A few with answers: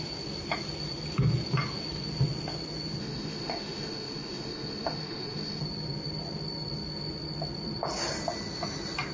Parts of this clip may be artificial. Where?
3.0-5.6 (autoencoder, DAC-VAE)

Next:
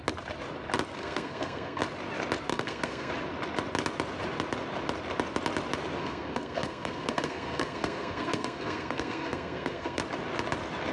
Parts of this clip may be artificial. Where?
1.0-1.8 (codec, SNAC); 2.5-3.1; 6.0-10.0

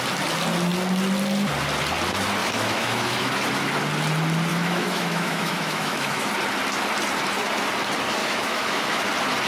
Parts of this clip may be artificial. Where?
2.4-3.3 (autoencoder, DAC-VAE); 4.5-6.3; 8.2-9.0

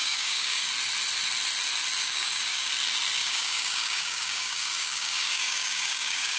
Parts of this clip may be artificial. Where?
0.0-0.7 (codec, DAC); 2.0-2.7; 3.2-6.4

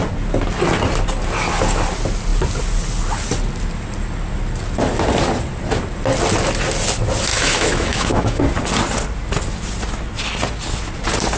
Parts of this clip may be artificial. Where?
7.3-8.4 (autoencoder, DAC-VAE)

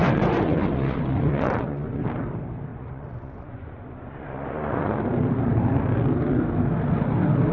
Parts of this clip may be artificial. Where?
0.0-2.0 (vocoder, Vocos); 2.7-5.0

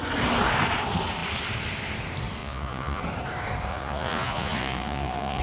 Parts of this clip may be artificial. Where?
2.4-3.0 (vocoder, Vocos); 3.7-5.4